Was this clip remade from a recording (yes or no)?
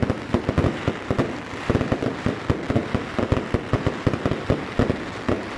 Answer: no